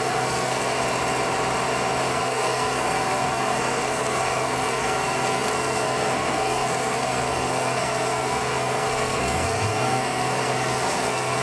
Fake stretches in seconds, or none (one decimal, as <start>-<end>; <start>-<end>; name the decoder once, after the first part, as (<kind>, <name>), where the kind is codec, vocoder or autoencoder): 0.0-0.8 (codec, SNAC); 2.1-11.4